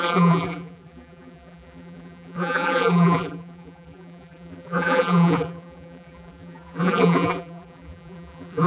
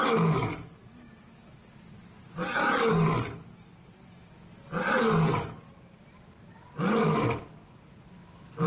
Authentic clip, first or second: second